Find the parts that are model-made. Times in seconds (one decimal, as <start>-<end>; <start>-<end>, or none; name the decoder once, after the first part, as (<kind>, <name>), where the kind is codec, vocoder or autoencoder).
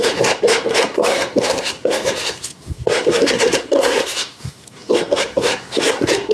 0.0-6.3 (codec, SNAC)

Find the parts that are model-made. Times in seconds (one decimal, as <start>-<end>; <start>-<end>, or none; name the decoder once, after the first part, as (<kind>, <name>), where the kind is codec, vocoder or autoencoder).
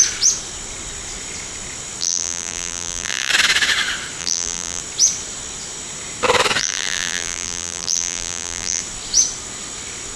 2.0-3.3 (vocoder, BigVGAN v2); 4.2-4.8; 6.6-8.8